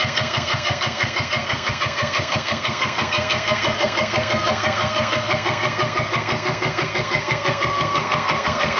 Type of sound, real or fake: fake